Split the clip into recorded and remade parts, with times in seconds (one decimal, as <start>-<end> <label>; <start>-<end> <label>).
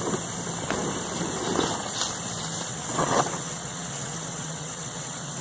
0.0-2.7 recorded; 2.7-5.4 remade